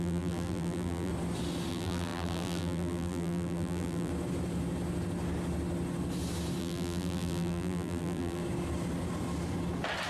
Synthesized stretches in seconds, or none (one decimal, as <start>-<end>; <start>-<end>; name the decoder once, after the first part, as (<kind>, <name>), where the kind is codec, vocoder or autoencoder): 0.0-1.1 (vocoder, BigVGAN v2); 1.7-4.1; 6.6-8.4